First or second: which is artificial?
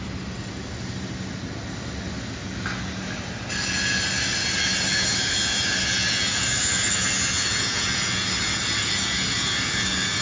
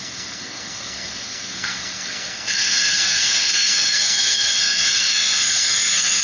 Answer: second